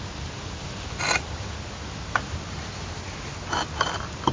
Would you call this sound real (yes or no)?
yes